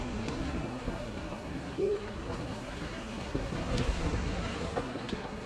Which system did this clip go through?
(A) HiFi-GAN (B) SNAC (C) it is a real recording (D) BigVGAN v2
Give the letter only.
B